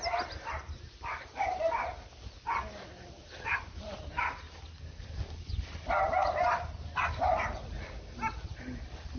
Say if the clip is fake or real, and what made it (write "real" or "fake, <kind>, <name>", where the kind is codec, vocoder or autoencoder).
real